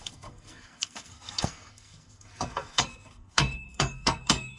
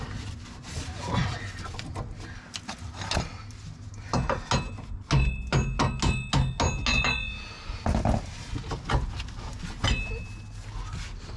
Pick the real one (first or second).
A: second